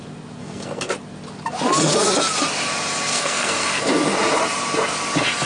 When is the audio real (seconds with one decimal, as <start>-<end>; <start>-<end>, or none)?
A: 0.0-0.4; 0.9-3.1; 3.8-5.5